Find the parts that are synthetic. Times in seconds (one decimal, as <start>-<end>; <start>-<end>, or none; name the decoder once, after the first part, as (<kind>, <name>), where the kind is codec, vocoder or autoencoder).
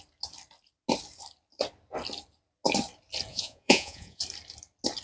3.3-4.2 (vocoder, Vocos)